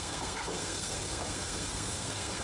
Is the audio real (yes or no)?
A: no